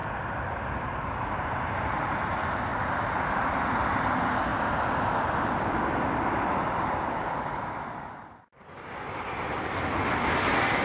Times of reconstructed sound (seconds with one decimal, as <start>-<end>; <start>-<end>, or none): none